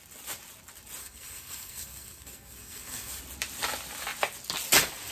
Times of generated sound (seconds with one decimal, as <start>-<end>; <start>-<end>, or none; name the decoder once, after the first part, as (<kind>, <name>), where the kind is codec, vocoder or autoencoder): 1.0-3.2 (codec, SNAC)